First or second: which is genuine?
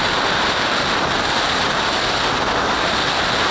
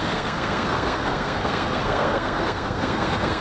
first